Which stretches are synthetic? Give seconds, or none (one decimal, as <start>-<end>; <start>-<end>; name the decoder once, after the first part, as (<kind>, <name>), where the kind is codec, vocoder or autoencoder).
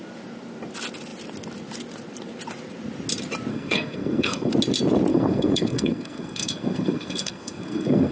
3.5-4.5 (codec, SNAC); 5.1-8.1